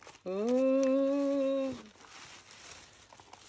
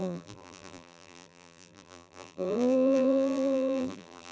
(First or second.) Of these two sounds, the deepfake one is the second